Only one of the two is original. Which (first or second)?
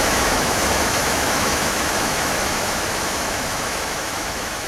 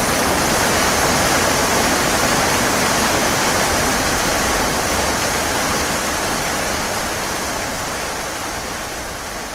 second